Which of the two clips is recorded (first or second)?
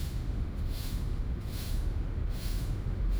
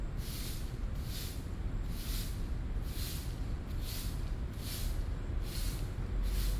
second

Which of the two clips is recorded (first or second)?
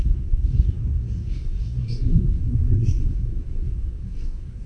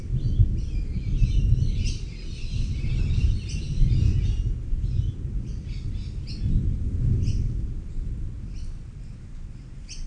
second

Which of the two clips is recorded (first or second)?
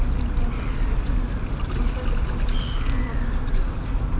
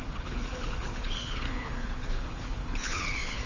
first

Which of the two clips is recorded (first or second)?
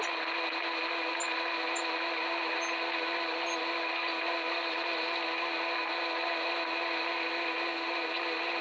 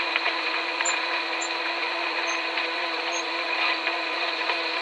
first